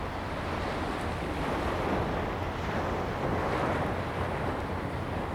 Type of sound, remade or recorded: recorded